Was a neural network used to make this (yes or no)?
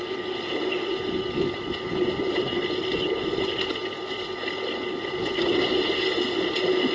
no